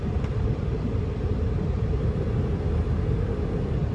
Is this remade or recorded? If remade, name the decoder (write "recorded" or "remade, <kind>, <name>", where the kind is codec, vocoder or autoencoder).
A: recorded